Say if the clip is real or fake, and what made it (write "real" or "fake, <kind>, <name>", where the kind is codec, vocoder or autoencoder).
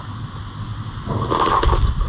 real